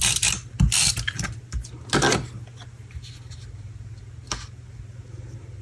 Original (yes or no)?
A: yes